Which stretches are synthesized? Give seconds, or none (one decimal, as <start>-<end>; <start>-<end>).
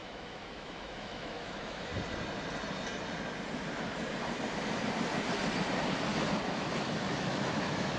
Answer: 0.0-1.9; 6.5-8.0